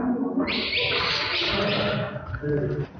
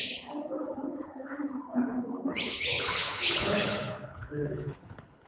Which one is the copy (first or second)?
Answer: second